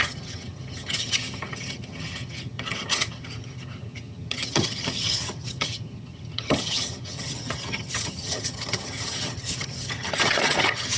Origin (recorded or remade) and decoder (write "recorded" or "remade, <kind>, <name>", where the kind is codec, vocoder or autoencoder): remade, vocoder, HiFi-GAN